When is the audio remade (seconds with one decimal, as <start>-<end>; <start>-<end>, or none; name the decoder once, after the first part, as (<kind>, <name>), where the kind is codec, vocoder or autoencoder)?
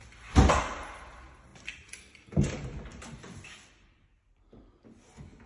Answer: 1.5-2.3 (vocoder, BigVGAN v2); 2.9-4.1